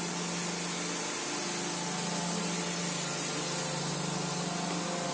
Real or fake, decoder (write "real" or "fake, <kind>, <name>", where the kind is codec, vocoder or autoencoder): real